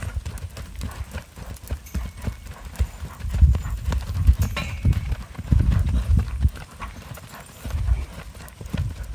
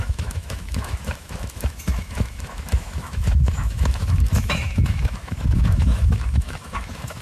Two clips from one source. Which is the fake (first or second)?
second